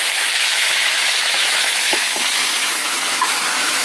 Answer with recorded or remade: remade